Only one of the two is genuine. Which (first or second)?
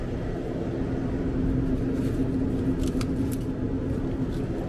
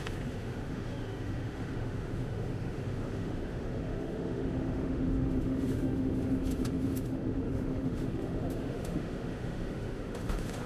first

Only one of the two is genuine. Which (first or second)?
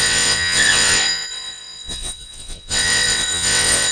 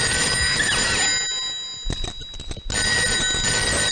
second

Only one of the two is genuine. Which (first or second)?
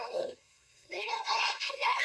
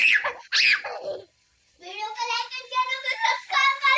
second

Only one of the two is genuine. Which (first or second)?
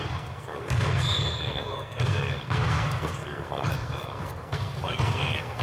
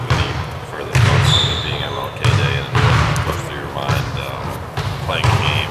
second